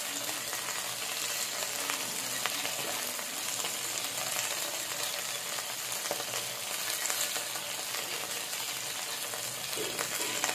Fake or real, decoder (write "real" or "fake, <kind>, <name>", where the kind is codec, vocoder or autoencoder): real